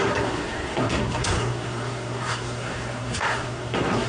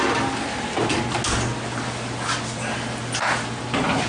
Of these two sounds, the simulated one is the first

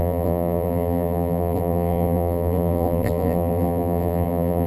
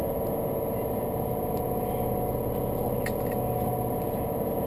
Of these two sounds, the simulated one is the first